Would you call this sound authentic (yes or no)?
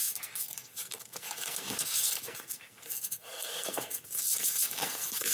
no